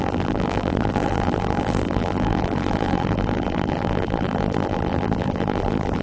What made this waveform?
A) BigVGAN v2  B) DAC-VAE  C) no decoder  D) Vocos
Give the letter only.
A